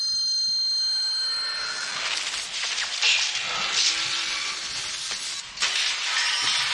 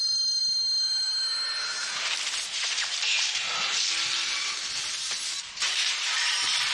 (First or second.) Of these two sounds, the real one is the first